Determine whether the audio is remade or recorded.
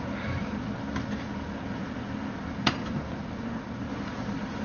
recorded